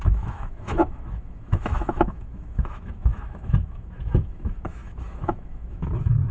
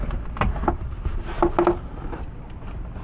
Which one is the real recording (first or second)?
second